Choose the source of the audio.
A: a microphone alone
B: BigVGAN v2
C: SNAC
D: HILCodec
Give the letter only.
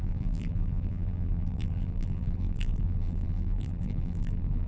B